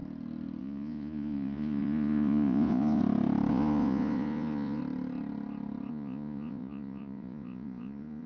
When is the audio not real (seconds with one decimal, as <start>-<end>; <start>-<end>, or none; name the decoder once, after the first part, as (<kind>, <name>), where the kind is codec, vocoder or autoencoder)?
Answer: 0.6-3.0 (vocoder, Vocos); 3.5-4.8; 5.9-8.3